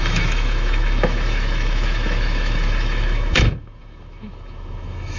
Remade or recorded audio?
remade